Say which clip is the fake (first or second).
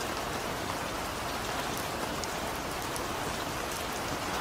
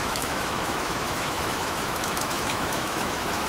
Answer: second